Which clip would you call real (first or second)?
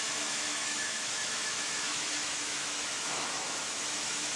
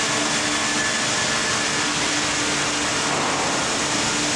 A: second